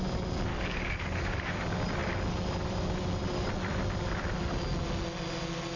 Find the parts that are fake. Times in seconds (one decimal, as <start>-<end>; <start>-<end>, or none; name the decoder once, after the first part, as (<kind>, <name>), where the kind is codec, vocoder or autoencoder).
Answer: 0.5-1.6 (codec, DAC)